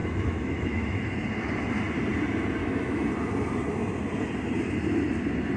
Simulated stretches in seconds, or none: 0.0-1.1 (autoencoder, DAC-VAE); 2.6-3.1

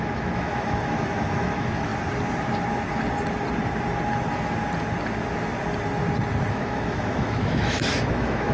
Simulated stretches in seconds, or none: 0.0-1.9 (autoencoder, DAC-VAE); 6.5-8.5

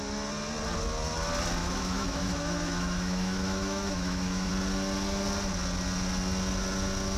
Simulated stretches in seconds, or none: 1.6-4.5 (autoencoder, DAC-VAE)

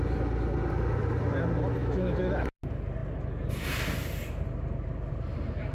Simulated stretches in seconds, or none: 1.8-2.6 (autoencoder, DAC-VAE)